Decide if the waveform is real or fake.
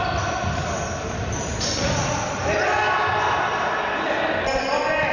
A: real